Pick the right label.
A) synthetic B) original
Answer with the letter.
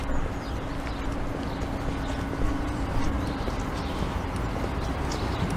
B